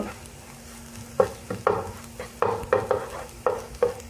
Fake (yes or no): no